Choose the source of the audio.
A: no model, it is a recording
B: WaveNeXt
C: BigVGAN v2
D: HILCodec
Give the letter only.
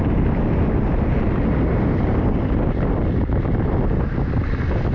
A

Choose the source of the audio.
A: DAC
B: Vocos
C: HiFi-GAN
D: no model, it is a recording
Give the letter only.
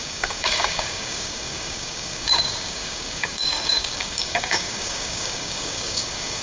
A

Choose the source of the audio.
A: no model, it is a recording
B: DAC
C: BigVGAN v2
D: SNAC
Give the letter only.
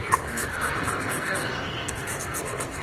D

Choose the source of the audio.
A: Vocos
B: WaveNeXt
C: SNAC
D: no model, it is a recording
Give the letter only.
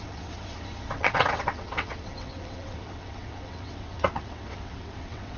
B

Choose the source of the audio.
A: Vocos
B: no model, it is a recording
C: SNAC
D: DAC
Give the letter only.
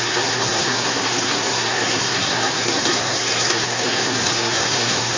C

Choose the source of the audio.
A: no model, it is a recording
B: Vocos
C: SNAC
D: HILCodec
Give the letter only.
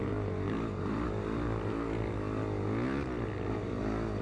A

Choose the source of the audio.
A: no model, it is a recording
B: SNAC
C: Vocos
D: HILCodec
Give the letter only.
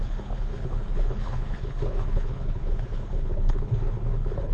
D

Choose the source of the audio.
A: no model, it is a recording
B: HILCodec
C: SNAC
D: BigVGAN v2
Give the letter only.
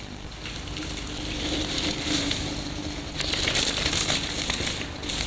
A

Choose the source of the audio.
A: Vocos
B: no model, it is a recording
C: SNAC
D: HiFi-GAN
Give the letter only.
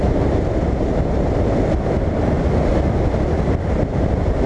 B